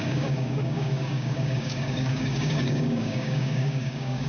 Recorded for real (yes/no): no